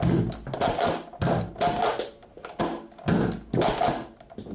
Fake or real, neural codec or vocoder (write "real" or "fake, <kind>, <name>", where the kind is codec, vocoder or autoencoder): real